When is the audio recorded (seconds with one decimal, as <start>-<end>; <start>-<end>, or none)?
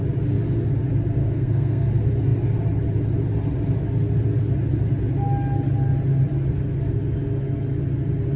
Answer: 0.0-1.2; 1.9-8.4